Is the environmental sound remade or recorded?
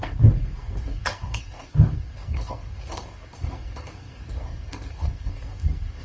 remade